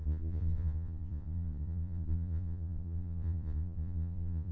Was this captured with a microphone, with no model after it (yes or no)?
no